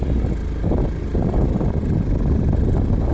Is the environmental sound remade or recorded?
recorded